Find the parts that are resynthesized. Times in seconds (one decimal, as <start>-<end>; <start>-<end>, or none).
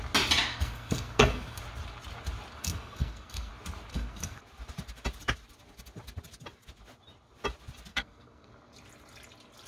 0.5-1.6; 2.6-3.5; 3.9-4.4; 7.9-8.5